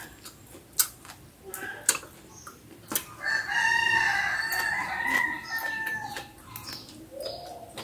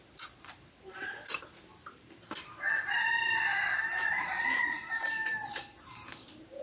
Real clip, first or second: first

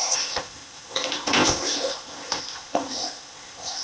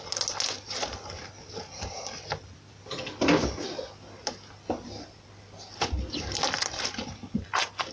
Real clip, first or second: second